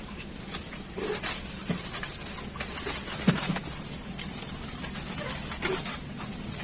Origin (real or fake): real